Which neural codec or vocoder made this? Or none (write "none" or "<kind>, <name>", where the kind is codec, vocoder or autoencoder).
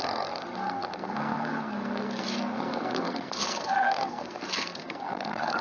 codec, SNAC